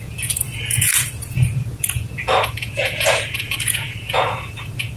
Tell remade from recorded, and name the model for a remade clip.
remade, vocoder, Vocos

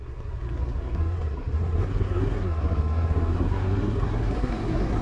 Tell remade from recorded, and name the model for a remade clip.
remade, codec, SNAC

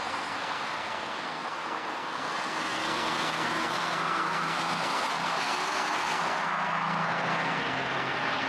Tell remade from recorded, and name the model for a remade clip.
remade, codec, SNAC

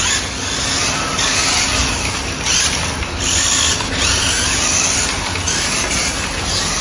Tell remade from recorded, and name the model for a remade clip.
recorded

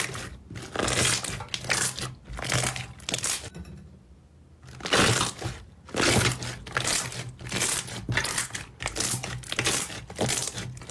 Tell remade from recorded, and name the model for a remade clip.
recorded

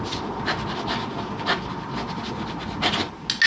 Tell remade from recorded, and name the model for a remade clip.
recorded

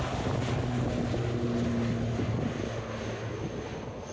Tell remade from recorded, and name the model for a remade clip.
recorded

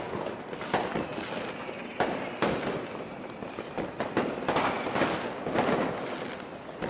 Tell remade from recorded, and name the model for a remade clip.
recorded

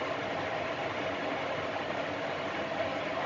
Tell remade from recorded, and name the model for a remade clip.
recorded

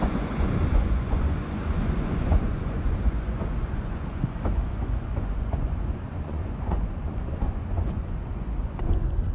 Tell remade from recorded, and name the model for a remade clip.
remade, vocoder, Vocos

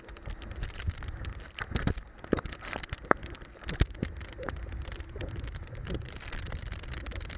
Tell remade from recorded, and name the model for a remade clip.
remade, vocoder, BigVGAN v2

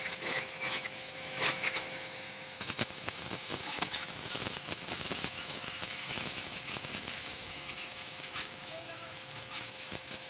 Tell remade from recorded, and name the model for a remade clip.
remade, autoencoder, DAC-VAE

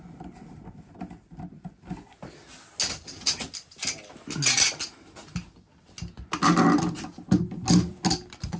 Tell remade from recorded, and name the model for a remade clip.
recorded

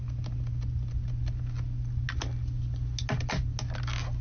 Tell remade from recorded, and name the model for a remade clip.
recorded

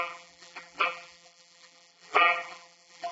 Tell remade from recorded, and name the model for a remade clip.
remade, vocoder, BigVGAN v2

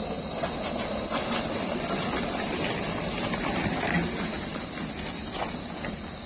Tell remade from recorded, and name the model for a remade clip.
recorded